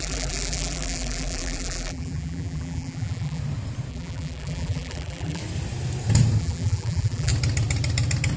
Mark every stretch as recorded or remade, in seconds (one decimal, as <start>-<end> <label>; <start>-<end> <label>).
0.0-3.4 remade; 3.4-3.9 recorded; 3.9-5.4 remade; 5.4-6.4 recorded; 6.4-7.3 remade; 7.3-8.4 recorded